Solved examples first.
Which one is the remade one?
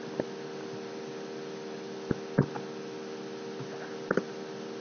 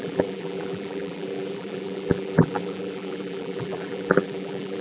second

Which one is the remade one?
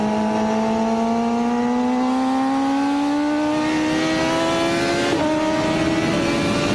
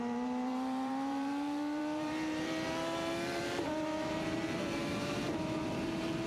second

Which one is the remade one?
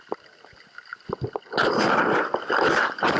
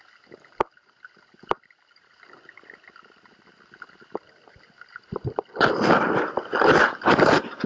second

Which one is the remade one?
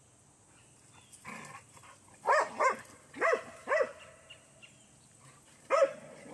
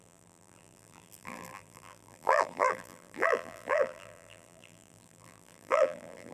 second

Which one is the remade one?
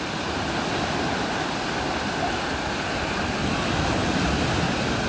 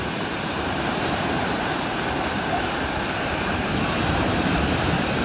second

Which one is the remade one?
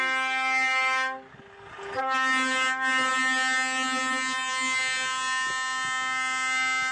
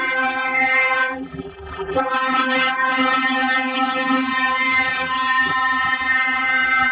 second